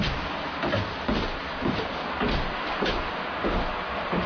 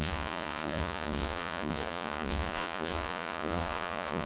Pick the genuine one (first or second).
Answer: first